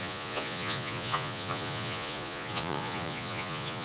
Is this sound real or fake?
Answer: fake